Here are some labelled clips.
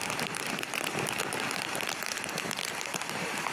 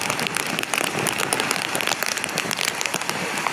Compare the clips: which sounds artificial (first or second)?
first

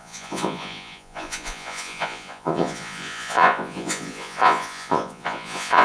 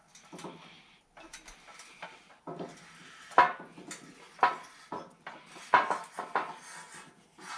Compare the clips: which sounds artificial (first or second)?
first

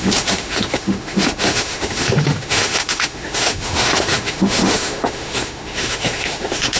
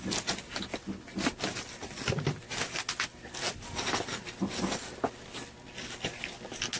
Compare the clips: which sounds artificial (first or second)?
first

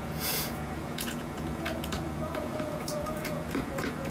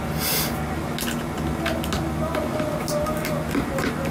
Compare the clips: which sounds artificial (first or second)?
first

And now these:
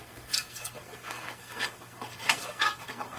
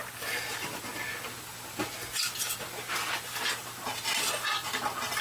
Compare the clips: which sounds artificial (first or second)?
first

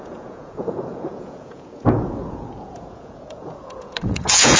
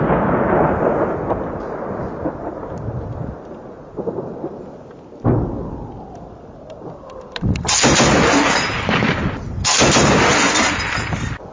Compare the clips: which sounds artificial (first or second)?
first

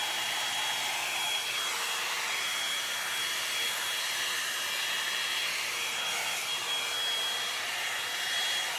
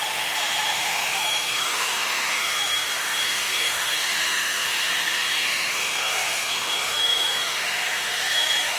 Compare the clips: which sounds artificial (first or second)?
second